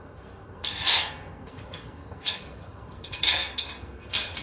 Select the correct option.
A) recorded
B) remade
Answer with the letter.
B